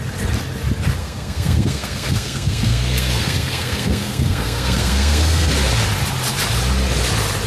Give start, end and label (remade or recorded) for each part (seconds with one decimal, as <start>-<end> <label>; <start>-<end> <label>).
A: 0.0-1.0 recorded; 1.0-5.5 remade; 5.5-7.5 recorded